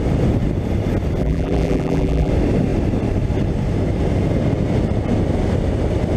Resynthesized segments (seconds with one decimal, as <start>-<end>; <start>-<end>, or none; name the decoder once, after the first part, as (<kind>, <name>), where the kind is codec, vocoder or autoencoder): 1.2-2.3 (vocoder, BigVGAN v2)